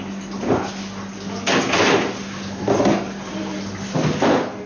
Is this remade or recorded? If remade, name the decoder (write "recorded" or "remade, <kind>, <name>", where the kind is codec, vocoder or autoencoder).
recorded